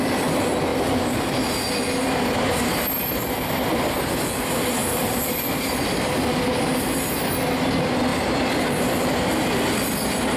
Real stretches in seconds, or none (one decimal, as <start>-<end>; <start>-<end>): 0.0-4.8; 5.8-10.4